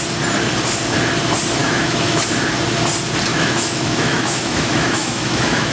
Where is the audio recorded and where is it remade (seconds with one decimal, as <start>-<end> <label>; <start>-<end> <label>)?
0.0-1.6 recorded; 1.6-2.2 remade; 2.2-3.3 recorded; 3.3-5.7 remade

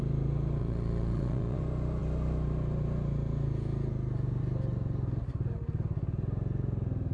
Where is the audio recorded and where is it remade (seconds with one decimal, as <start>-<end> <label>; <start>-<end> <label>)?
0.0-0.6 recorded; 0.6-1.6 remade; 1.6-7.1 recorded

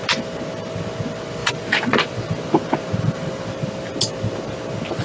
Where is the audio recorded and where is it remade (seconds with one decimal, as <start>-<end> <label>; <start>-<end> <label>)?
0.0-1.4 recorded; 1.4-3.9 remade; 3.9-5.0 recorded

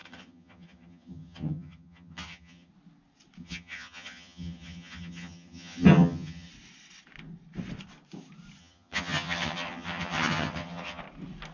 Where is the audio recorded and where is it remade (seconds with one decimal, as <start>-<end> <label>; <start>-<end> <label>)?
0.0-2.7 remade; 2.7-3.4 recorded; 3.4-6.5 remade; 6.5-8.6 recorded; 8.6-11.0 remade; 11.0-11.5 recorded

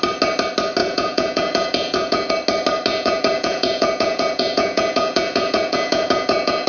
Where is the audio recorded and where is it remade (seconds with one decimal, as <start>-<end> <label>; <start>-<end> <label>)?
0.0-0.8 recorded; 0.8-2.3 remade; 2.3-2.9 recorded; 2.9-6.7 remade

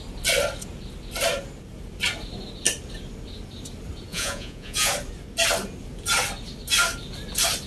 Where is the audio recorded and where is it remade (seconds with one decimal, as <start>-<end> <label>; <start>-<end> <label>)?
0.0-4.1 recorded; 4.1-4.9 remade; 4.9-7.7 recorded

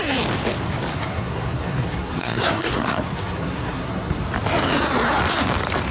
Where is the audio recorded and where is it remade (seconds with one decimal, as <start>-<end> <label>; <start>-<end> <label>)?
0.0-0.9 recorded; 0.9-4.2 remade; 4.2-5.9 recorded